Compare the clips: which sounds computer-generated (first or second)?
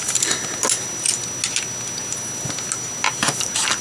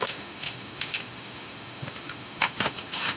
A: second